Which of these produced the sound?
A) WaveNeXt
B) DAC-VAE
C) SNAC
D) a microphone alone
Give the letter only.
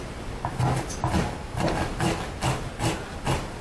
D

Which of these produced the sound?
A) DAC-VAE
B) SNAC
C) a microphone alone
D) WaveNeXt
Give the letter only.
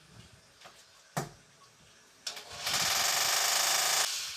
C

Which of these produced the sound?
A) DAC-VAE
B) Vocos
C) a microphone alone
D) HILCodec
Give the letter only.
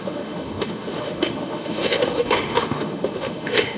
A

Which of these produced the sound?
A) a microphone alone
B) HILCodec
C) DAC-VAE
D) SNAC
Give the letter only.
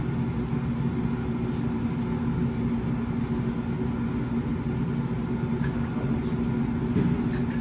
A